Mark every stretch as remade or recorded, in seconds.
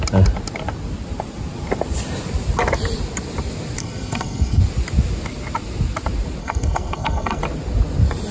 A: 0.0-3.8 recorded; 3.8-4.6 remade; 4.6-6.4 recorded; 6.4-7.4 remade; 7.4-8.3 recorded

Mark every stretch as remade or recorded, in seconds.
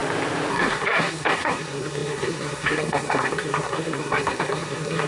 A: 0.0-0.5 recorded; 0.5-5.1 remade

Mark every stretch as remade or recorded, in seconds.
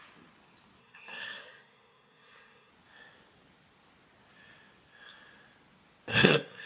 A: 0.0-0.8 recorded; 0.8-2.7 remade; 2.7-6.1 recorded; 6.1-6.7 remade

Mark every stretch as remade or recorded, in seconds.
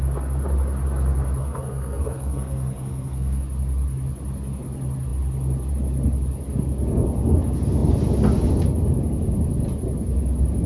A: 0.0-1.4 recorded; 1.4-3.4 remade; 3.4-10.7 recorded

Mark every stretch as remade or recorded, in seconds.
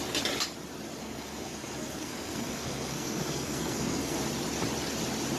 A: 0.0-1.0 recorded; 1.0-4.2 remade; 4.2-5.4 recorded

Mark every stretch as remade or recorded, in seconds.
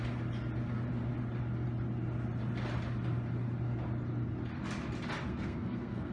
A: 0.0-5.3 recorded; 5.3-6.1 remade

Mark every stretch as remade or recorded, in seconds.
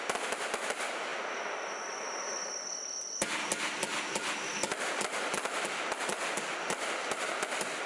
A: 0.0-7.9 recorded